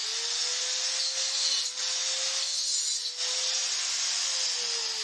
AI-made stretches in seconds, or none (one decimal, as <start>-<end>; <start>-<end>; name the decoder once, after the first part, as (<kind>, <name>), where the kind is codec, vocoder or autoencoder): none